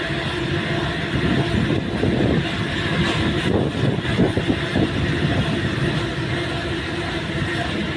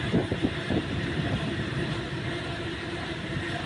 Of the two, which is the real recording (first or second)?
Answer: first